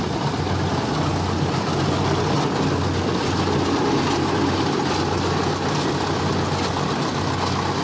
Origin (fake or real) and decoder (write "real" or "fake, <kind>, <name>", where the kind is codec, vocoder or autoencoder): real